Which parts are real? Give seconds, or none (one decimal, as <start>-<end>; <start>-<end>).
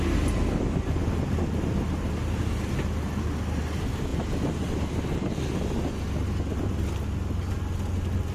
0.0-8.3